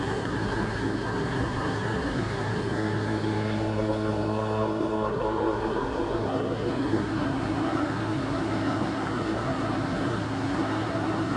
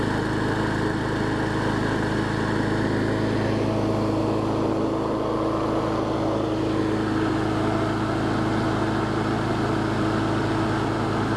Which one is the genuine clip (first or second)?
second